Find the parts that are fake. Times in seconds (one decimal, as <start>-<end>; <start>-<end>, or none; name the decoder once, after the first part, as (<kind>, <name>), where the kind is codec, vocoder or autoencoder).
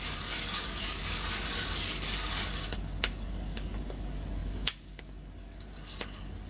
0.0-6.5 (codec, DAC)